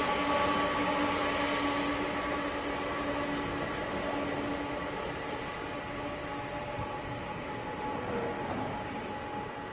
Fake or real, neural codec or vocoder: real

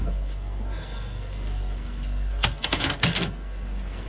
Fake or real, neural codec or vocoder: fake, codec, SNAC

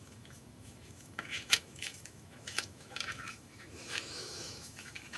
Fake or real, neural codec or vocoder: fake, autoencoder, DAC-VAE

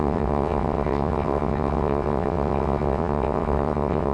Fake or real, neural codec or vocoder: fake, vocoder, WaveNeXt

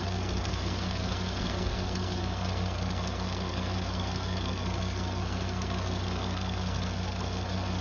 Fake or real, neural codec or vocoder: fake, codec, SNAC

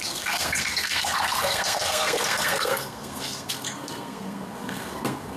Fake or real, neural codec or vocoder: fake, codec, SNAC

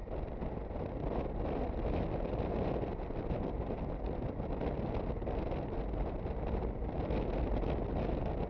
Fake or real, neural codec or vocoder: real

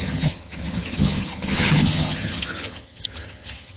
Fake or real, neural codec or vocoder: fake, vocoder, HiFi-GAN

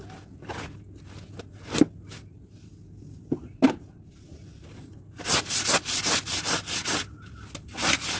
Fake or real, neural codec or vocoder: real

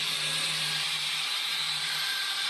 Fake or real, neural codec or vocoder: fake, vocoder, BigVGAN v2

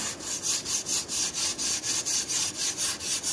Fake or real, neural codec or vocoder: real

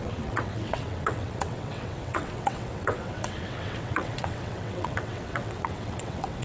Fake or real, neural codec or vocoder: fake, vocoder, WaveNeXt